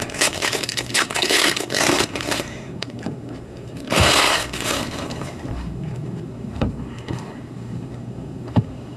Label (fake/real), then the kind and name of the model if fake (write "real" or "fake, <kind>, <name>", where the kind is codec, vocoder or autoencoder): fake, codec, SNAC